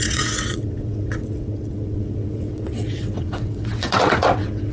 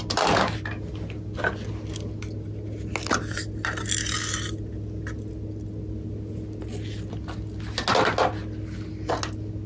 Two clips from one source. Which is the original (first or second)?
second